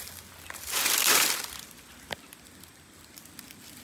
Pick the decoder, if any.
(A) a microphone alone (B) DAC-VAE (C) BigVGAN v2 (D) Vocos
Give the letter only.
A